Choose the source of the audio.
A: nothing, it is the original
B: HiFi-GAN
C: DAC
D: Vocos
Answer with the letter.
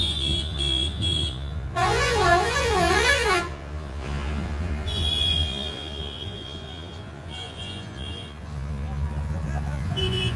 D